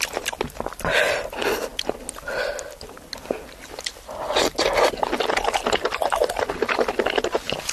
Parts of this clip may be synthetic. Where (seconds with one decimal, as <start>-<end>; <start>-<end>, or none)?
none